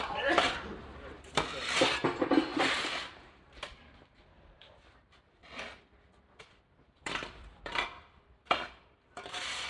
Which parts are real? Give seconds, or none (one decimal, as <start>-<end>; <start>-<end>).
2.5-3.3; 5.4-6.4